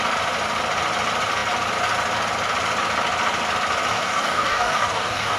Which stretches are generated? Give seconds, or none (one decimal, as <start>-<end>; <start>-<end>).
3.9-5.4